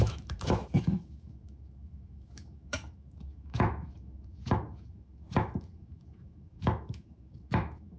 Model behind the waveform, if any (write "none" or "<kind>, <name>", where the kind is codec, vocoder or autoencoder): autoencoder, DAC-VAE